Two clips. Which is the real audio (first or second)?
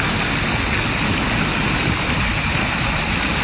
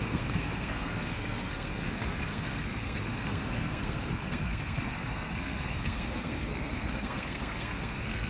first